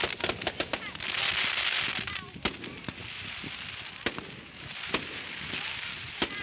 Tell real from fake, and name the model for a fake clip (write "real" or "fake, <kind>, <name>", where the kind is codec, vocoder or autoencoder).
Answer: real